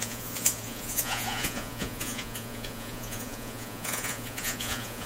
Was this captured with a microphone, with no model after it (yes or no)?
no